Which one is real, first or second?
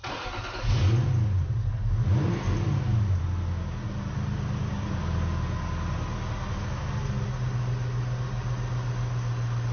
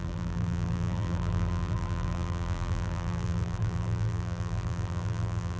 first